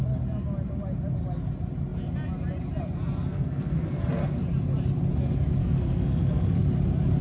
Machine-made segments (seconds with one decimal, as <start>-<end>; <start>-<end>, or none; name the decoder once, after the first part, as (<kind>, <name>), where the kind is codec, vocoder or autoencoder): 3.3-4.0 (codec, SNAC); 5.6-6.6